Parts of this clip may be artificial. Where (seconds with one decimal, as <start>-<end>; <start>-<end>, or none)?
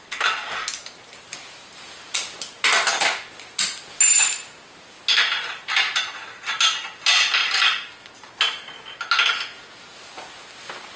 none